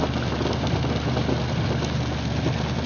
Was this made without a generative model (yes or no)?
yes